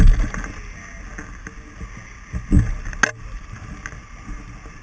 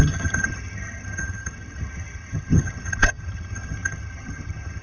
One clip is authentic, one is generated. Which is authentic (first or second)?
first